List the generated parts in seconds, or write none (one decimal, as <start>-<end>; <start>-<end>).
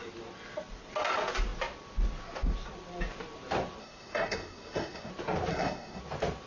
3.8-5.1; 5.5-6.0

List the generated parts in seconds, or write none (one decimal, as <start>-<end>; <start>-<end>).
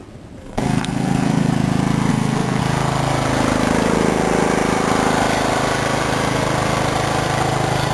0.4-1.5; 2.1-2.6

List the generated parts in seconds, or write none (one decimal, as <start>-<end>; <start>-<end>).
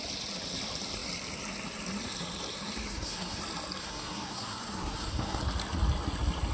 2.8-3.4; 3.8-5.4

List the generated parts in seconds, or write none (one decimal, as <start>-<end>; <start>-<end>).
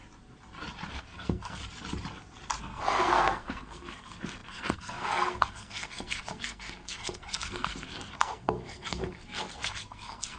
0.9-1.6; 2.6-10.4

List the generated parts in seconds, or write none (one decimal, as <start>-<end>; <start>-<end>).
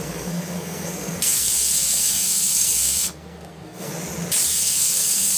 0.0-3.9; 4.5-5.4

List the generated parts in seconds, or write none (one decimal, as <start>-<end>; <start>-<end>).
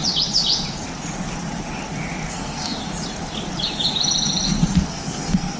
2.3-2.8; 4.9-5.6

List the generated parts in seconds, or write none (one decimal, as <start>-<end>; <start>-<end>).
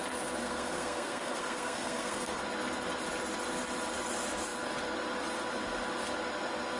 0.4-2.4